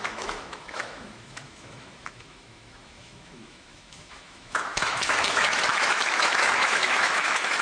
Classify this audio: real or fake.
fake